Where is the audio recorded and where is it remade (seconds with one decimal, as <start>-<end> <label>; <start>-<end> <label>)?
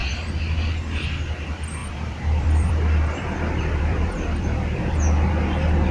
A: 0.0-1.8 recorded; 1.8-5.3 remade; 5.3-5.9 recorded